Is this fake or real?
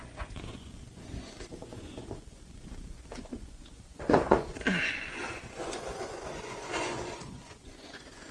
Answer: fake